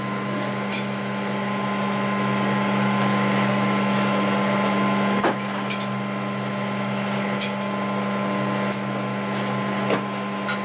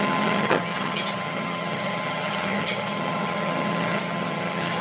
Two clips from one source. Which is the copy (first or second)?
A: second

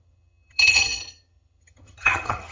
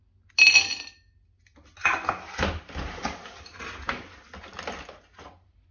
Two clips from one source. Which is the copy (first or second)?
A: first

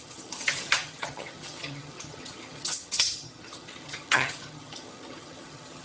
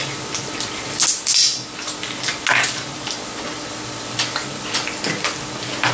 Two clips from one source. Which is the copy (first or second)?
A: first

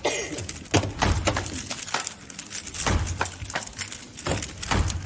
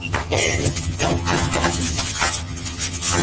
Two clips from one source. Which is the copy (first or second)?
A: second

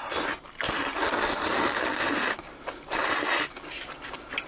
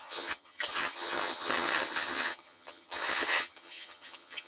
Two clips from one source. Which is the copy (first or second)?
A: second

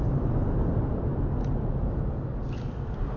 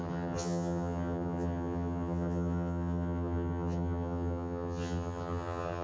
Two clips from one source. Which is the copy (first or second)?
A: second